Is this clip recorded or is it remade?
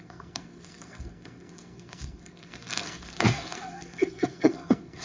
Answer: remade